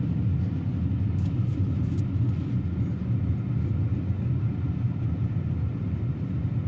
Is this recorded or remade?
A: recorded